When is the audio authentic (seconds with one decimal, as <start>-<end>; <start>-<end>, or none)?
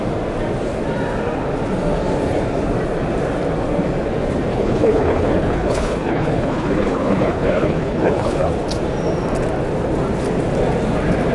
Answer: 0.0-4.5; 8.5-11.3